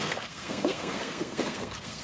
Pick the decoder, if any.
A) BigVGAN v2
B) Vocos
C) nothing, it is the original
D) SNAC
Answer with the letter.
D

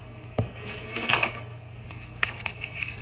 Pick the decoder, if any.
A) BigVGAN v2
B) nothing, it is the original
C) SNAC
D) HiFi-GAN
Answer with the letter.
C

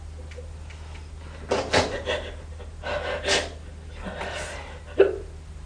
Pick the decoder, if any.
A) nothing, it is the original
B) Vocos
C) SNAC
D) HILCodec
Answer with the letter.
A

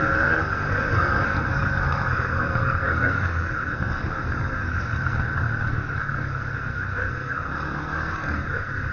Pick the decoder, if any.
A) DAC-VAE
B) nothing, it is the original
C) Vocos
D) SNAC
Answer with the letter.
D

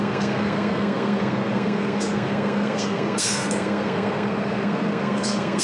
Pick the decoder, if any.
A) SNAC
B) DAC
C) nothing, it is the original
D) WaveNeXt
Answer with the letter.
A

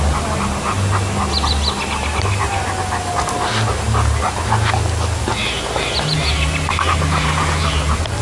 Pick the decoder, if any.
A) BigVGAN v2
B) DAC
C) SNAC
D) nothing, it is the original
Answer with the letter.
D